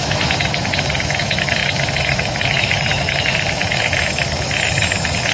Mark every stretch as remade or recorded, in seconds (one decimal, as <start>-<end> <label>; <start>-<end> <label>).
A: 0.0-5.3 remade